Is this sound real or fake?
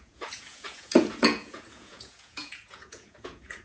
fake